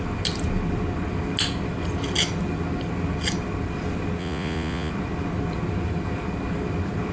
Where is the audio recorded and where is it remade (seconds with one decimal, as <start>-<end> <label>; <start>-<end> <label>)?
0.0-4.2 recorded; 4.2-4.9 remade; 4.9-7.1 recorded